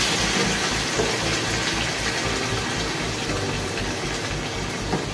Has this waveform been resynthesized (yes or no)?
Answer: no